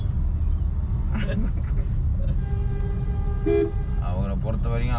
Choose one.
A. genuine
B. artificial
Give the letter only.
A